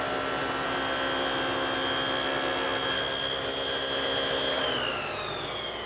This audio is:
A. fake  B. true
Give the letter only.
B